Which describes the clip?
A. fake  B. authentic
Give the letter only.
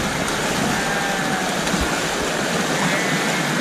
B